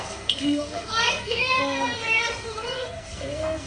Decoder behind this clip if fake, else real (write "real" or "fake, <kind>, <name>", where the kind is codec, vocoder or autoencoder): fake, codec, SNAC